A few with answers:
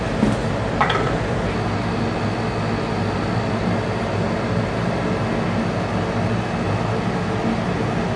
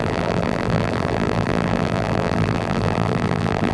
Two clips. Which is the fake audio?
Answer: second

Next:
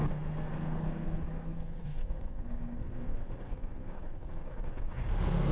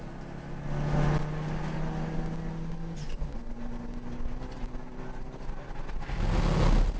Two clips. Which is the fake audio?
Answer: first